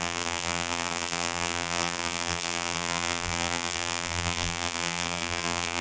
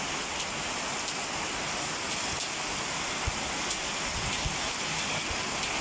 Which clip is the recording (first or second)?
second